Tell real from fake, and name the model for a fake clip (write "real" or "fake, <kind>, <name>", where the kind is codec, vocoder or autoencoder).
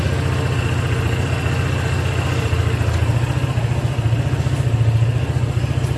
real